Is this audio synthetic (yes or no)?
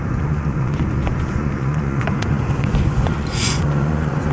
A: yes